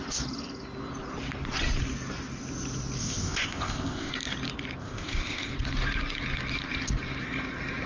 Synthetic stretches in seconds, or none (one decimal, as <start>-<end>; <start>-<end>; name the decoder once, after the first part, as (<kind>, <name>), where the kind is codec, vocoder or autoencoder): 3.0-4.1 (codec, ZipCodec); 4.8-5.5